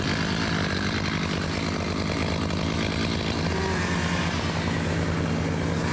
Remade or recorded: recorded